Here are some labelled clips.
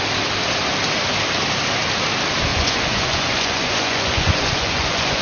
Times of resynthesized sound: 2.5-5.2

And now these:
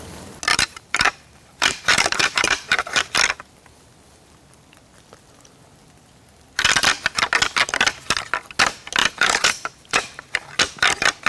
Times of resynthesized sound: 0.5-3.1; 9.0-10.5

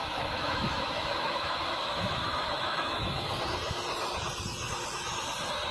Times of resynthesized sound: 0.0-3.4